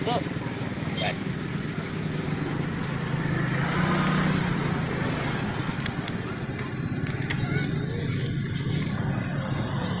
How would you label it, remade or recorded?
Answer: recorded